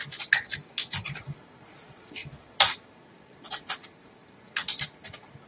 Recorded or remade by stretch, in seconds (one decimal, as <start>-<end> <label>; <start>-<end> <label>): 0.0-5.5 recorded